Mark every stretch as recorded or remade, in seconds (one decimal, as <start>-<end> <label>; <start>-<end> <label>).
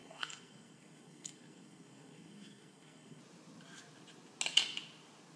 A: 0.0-3.2 remade; 3.2-5.4 recorded